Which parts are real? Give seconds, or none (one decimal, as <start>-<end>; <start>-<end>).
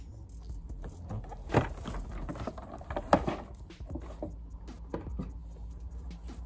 0.0-6.5